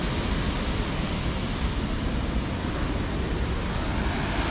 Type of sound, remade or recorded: recorded